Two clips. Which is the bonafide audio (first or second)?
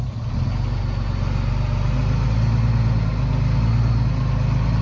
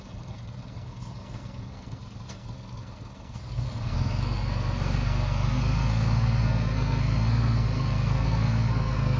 first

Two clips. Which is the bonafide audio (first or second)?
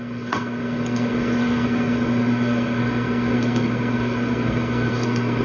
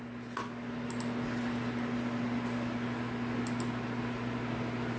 second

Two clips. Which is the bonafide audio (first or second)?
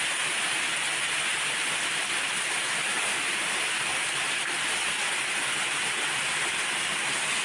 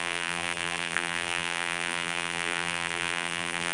first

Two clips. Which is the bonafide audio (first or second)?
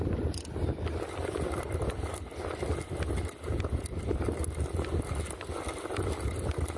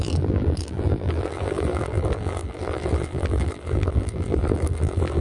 first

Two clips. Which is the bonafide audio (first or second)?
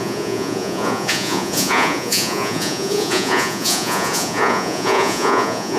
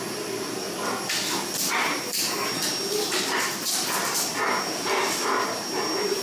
second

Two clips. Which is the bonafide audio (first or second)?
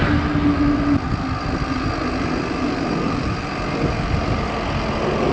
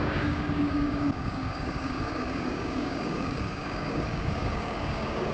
first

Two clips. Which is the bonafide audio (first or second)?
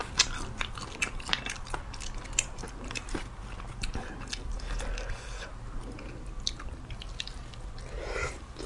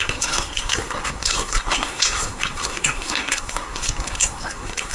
first